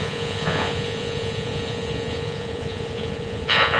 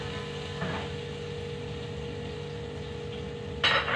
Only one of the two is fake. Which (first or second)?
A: first